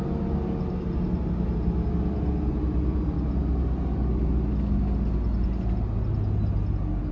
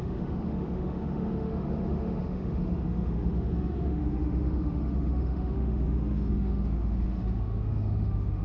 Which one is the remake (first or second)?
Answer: second